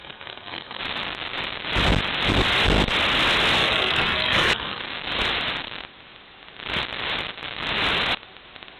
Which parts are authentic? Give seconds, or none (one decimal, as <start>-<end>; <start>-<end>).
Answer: 0.8-3.6; 4.8-8.8